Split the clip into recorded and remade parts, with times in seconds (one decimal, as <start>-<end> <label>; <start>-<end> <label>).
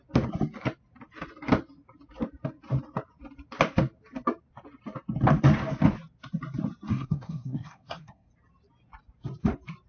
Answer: 0.0-6.9 recorded; 6.9-8.3 remade; 8.3-9.9 recorded